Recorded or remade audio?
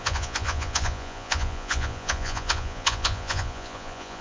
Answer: remade